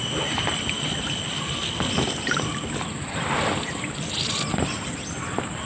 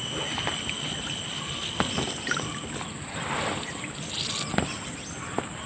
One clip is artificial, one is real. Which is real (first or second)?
second